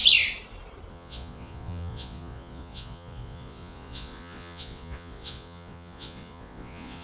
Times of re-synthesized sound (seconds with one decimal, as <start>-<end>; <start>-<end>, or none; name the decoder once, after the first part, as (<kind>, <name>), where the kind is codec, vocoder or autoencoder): 0.9-7.0 (vocoder, Vocos)